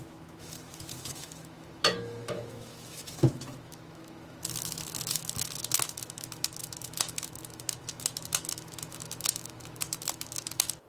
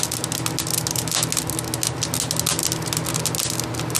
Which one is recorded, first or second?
second